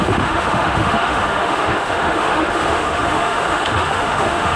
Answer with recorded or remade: remade